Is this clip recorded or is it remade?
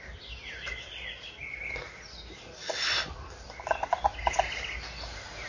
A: recorded